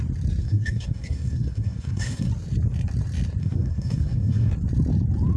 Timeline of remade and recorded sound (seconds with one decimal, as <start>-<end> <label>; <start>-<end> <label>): 0.0-0.4 recorded; 0.4-2.3 remade; 2.3-3.4 recorded; 3.4-4.5 remade; 4.5-5.4 recorded